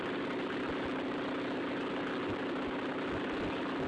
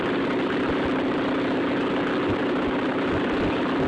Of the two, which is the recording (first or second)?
first